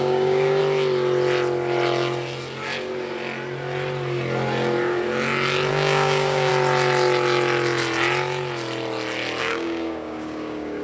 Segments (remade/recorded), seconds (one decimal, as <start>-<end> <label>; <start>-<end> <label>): 0.0-0.6 remade; 0.6-5.7 recorded; 5.7-6.5 remade; 6.5-9.4 recorded; 9.4-10.8 remade